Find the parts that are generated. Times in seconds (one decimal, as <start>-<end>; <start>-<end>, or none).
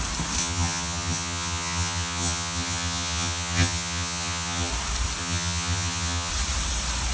0.4-4.7; 5.2-6.3